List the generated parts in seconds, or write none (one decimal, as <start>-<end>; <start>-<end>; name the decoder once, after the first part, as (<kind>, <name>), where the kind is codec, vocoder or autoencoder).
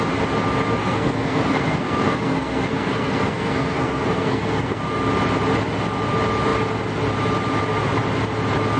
0.8-4.8 (codec, SNAC)